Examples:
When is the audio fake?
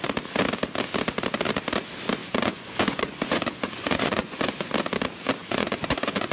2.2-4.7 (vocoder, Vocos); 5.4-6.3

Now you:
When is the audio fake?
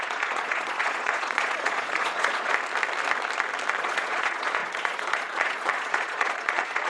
0.0-2.5 (vocoder, Vocos); 3.8-6.9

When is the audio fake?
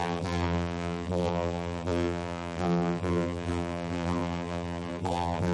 0.0-5.5 (vocoder, BigVGAN v2)